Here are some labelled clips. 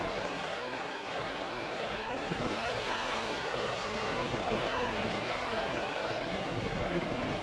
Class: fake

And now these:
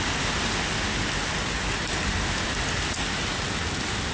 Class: real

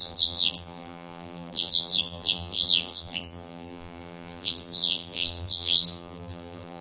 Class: fake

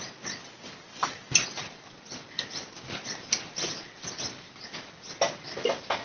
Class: real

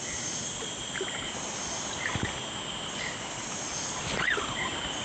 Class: real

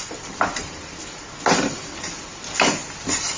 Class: real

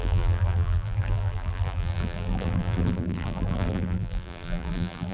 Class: fake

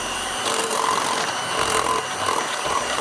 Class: fake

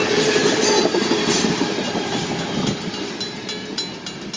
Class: real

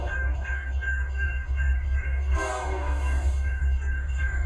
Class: fake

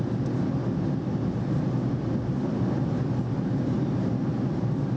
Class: real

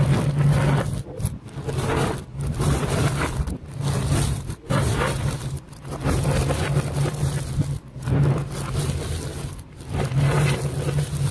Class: fake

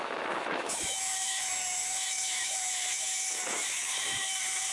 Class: fake